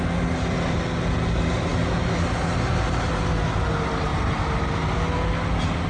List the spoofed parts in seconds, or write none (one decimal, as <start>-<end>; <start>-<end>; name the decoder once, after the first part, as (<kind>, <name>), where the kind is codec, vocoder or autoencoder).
none